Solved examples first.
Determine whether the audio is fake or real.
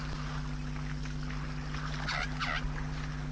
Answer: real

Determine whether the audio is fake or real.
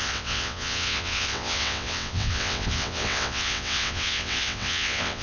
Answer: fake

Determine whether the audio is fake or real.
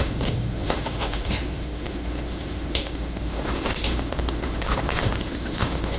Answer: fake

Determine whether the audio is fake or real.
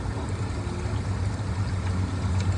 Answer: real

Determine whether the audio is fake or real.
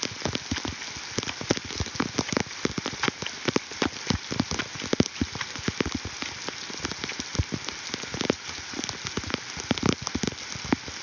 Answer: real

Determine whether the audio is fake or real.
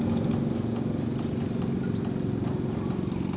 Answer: real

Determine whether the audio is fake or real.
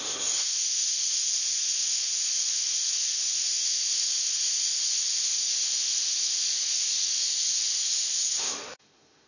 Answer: fake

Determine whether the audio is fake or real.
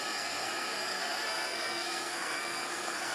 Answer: fake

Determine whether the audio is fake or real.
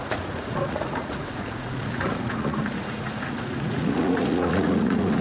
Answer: fake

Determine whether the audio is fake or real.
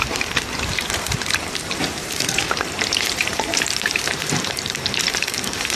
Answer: fake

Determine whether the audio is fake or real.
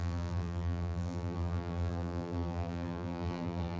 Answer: fake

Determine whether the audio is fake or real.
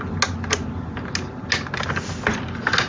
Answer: real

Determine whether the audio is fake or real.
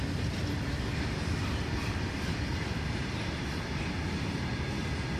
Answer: real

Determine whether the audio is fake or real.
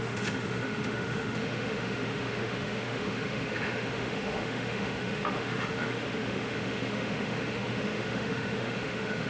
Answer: fake